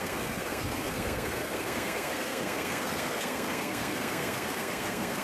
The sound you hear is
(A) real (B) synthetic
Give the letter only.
B